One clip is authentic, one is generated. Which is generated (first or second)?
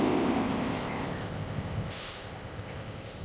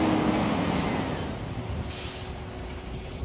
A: first